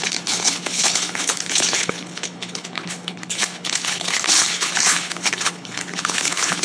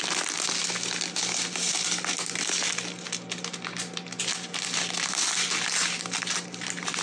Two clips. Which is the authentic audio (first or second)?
second